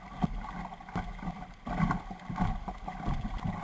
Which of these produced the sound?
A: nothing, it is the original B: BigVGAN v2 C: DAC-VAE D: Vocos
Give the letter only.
A